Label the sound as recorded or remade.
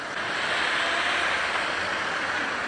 recorded